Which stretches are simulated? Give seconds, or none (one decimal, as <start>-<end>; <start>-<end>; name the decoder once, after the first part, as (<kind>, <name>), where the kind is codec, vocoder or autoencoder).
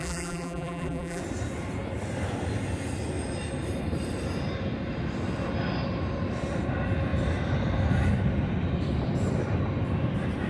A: 0.0-1.2 (vocoder, BigVGAN v2)